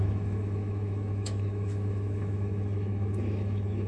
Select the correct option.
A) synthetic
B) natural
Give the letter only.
A